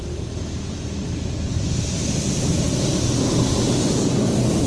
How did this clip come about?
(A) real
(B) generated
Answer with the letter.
B